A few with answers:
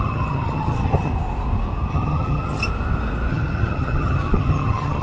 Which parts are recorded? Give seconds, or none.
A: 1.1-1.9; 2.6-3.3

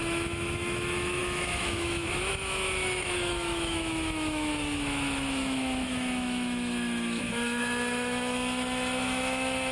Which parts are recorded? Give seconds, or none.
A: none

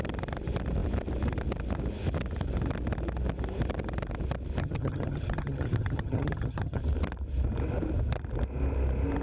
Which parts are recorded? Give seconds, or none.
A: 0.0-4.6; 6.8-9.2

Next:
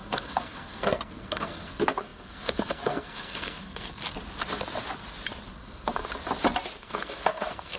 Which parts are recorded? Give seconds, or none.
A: 4.0-5.6; 6.0-6.8